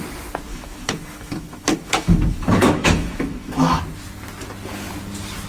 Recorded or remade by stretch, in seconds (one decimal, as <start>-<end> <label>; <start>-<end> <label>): 0.0-0.5 recorded; 0.5-3.8 remade; 3.8-5.5 recorded